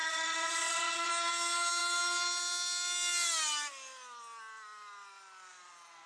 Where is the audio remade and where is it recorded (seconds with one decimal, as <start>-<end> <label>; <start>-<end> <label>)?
0.0-1.1 remade; 1.1-6.1 recorded